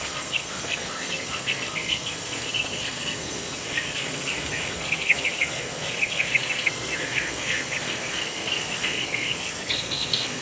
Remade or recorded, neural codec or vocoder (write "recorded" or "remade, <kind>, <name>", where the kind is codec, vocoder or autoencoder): remade, codec, SNAC